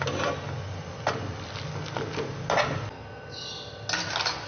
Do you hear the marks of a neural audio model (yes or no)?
no